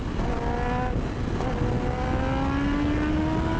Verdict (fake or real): real